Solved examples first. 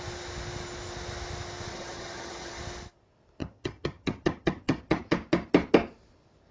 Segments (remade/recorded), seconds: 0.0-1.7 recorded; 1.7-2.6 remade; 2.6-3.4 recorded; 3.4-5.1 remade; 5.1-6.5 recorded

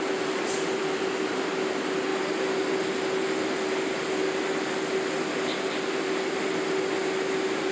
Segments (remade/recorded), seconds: 0.0-7.7 recorded

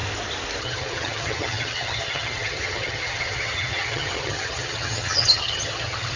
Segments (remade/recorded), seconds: 0.0-0.6 recorded; 0.6-6.2 remade

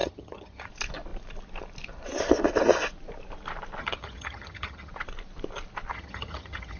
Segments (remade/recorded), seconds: 0.0-0.7 remade; 0.7-3.8 recorded; 3.8-4.9 remade; 4.9-5.9 recorded; 5.9-6.8 remade

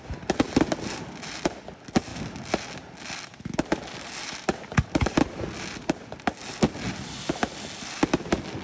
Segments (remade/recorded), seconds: 0.0-8.6 recorded

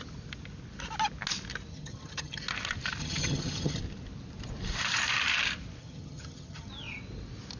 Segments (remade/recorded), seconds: 0.0-1.7 recorded; 1.7-2.4 remade; 2.4-3.0 recorded; 3.0-3.8 remade; 3.8-5.8 recorded; 5.8-6.7 remade; 6.7-7.6 recorded

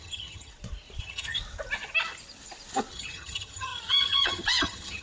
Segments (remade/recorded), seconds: 0.0-0.5 remade; 0.5-1.0 recorded; 1.0-1.4 remade; 1.4-2.9 recorded; 2.9-5.0 remade

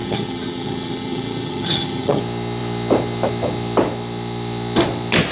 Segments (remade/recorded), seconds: 0.0-2.2 remade; 2.2-5.3 recorded